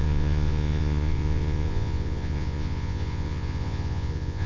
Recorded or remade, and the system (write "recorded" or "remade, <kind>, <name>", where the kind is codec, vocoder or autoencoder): remade, vocoder, Vocos